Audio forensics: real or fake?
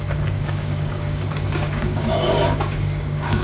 fake